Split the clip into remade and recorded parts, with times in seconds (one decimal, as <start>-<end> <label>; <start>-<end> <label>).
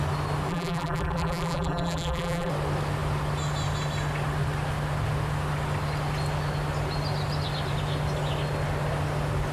0.0-0.5 recorded; 0.5-2.5 remade; 2.5-9.5 recorded